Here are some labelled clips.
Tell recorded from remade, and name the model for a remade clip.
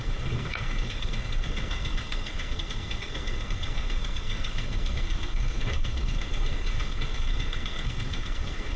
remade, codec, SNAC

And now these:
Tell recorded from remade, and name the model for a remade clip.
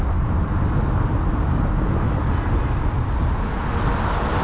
recorded